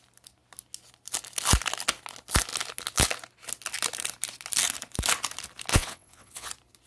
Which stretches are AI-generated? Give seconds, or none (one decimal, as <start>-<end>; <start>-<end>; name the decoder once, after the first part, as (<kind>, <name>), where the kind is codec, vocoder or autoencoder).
5.7-6.5 (vocoder, WaveNeXt)